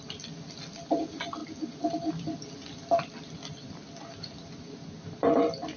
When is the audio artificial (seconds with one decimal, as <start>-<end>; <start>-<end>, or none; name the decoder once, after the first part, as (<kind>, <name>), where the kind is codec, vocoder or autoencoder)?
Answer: none